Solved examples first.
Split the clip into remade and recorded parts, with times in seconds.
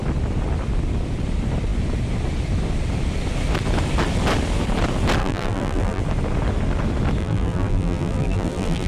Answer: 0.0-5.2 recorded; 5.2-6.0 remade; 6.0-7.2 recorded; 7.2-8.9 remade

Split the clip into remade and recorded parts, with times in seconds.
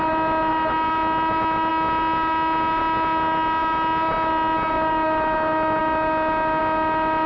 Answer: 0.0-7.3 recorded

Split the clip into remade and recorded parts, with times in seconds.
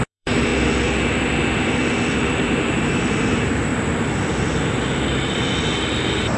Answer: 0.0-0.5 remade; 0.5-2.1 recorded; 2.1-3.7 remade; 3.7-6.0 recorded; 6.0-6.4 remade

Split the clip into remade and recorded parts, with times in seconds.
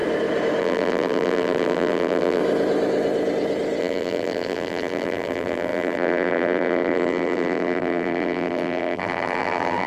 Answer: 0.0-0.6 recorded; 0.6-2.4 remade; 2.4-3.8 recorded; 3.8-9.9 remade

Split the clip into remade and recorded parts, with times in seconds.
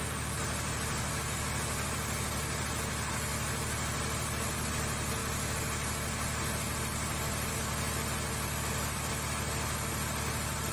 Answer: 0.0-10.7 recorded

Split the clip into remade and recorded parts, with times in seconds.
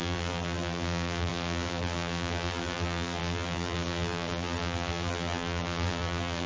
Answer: 0.0-6.5 remade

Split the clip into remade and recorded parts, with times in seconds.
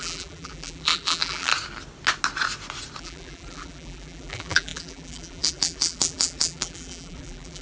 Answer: 0.0-1.5 remade; 1.5-3.0 recorded; 3.0-7.6 remade